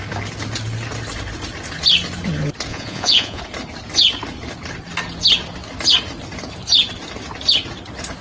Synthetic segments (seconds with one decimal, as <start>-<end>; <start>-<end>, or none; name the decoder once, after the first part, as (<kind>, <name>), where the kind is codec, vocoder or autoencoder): 2.7-3.4 (vocoder, Vocos)